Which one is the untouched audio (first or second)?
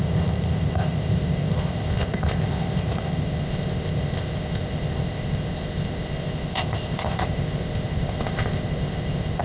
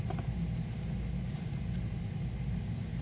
second